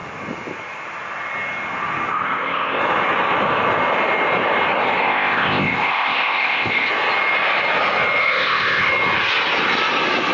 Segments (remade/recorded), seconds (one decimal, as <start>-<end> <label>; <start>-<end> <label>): 0.0-2.1 recorded; 2.1-2.8 remade; 2.8-5.0 recorded; 5.0-6.9 remade; 6.9-8.2 recorded; 8.2-8.9 remade; 8.9-10.3 recorded